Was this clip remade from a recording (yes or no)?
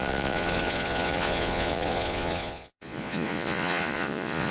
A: yes